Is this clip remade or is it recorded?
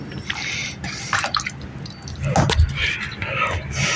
recorded